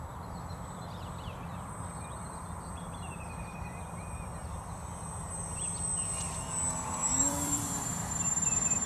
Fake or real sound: fake